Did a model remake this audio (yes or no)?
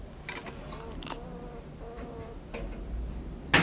no